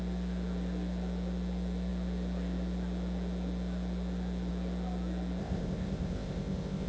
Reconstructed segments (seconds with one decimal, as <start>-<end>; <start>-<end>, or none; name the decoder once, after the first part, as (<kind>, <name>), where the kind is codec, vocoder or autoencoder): 5.4-6.9 (codec, ZipCodec)